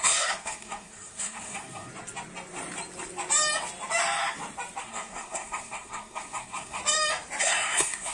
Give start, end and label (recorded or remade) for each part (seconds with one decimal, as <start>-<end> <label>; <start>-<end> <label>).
0.0-1.9 remade; 1.9-4.8 recorded; 4.8-6.8 remade; 6.8-7.4 recorded; 7.4-8.1 remade